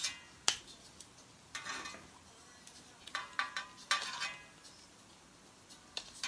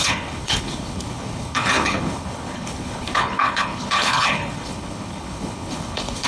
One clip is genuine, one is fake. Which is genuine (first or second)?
first